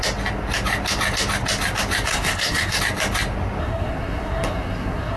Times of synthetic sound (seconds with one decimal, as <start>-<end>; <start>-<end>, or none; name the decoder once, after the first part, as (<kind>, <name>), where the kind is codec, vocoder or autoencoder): 2.1-2.8 (codec, SNAC); 3.6-5.2